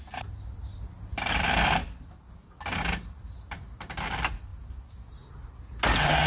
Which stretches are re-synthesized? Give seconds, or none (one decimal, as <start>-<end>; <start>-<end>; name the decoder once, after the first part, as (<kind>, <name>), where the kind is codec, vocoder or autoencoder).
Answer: none